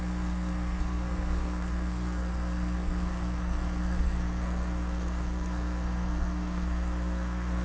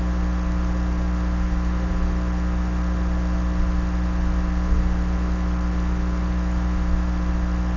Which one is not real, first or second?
first